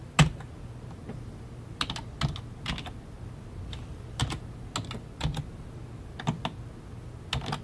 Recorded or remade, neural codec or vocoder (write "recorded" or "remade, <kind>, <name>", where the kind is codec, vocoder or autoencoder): recorded